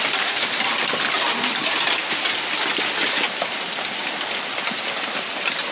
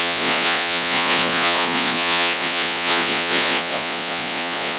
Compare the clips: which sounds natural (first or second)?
first